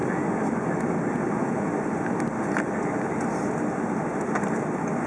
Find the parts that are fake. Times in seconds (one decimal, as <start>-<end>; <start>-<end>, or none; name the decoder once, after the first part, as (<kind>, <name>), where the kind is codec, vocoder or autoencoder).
none